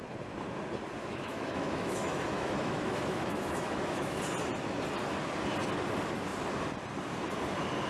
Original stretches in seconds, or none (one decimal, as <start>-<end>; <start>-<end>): 0.0-1.0; 4.2-7.9